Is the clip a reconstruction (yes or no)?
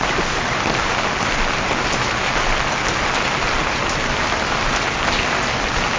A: no